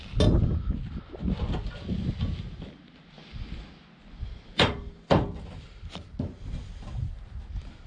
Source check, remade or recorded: recorded